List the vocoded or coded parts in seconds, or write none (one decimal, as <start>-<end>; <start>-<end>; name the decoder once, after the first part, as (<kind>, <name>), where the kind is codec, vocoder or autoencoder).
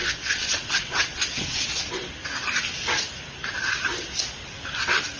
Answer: 0.0-2.1 (vocoder, WaveNeXt)